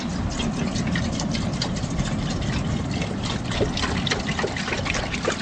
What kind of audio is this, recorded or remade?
recorded